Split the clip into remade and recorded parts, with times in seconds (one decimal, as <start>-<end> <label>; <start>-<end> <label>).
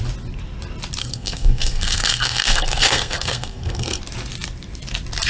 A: 0.0-1.0 recorded; 1.0-4.0 remade; 4.0-5.3 recorded